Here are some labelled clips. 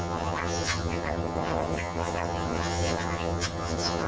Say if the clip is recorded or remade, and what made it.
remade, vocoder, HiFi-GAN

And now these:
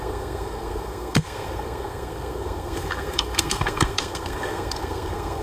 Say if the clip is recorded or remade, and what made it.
remade, codec, SNAC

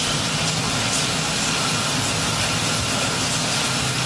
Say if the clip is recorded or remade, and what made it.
recorded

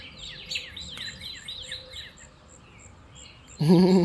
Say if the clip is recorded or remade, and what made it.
recorded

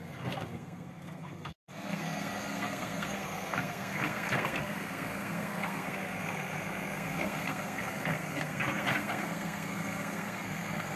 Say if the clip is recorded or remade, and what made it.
remade, codec, SNAC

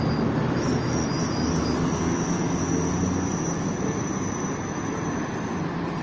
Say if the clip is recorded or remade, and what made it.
recorded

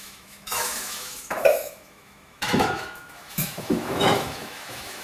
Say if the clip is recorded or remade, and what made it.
remade, autoencoder, DAC-VAE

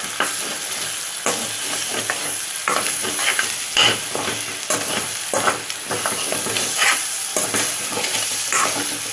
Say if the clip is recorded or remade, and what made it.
recorded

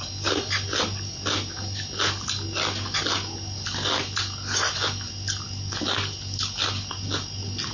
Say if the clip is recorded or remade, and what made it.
recorded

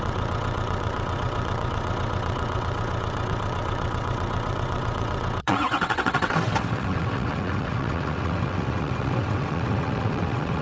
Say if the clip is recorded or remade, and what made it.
remade, vocoder, WaveNeXt